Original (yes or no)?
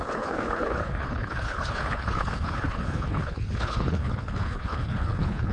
no